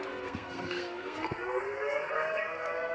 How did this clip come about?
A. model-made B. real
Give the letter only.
A